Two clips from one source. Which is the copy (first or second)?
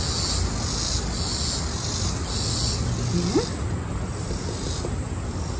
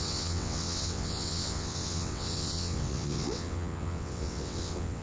second